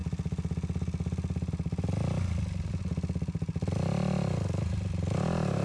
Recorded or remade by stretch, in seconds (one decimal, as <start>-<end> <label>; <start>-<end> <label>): 0.0-5.6 recorded